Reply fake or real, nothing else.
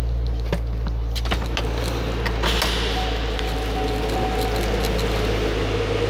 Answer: real